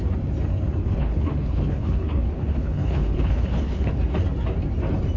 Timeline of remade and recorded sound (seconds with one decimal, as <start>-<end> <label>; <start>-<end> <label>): 0.0-0.8 recorded; 0.8-3.9 remade; 3.9-5.2 recorded